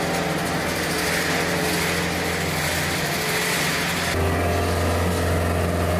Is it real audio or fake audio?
real